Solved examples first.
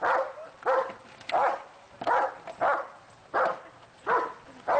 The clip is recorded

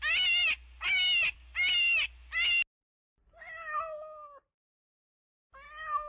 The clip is recorded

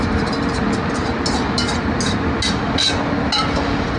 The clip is recorded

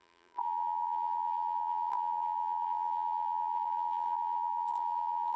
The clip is remade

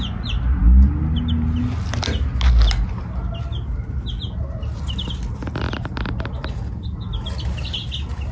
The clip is recorded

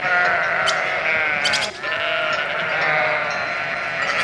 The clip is recorded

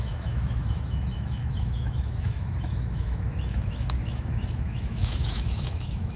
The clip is remade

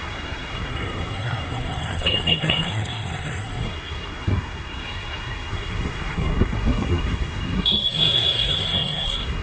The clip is remade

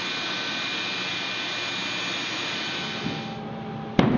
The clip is recorded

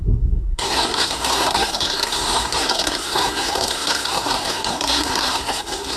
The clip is remade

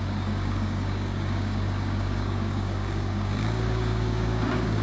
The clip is remade